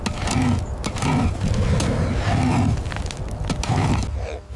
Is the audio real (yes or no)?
yes